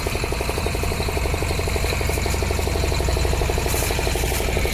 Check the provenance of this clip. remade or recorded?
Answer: recorded